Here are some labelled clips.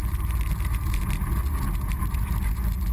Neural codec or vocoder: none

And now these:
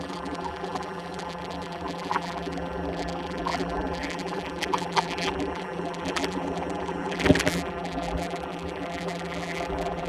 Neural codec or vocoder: vocoder, BigVGAN v2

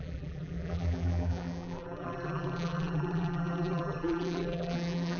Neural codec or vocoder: vocoder, BigVGAN v2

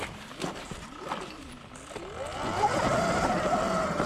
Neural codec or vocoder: none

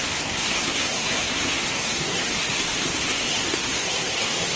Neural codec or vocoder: codec, SNAC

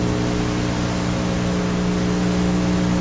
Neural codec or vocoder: none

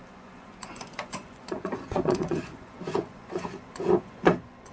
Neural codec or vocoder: vocoder, Vocos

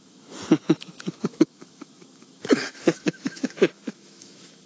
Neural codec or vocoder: autoencoder, DAC-VAE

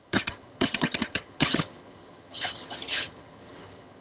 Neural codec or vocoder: vocoder, HiFi-GAN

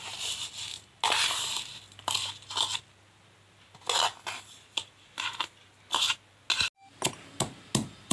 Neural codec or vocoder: none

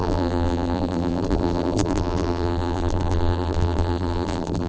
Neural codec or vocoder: vocoder, BigVGAN v2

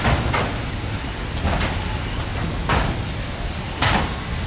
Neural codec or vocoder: none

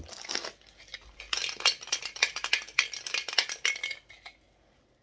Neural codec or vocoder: none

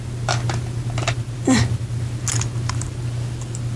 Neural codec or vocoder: none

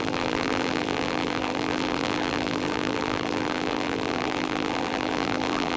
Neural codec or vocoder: vocoder, BigVGAN v2